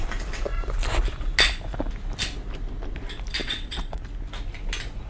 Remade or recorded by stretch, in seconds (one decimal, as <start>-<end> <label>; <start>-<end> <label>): 0.0-3.4 recorded; 3.4-4.0 remade; 4.0-5.1 recorded